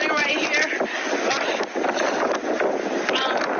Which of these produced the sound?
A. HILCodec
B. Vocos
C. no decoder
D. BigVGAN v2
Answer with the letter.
C